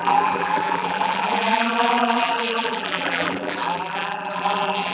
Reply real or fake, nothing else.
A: fake